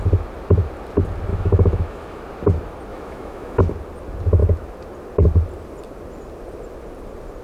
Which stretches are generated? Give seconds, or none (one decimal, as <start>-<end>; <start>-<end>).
1.3-2.2; 2.9-3.6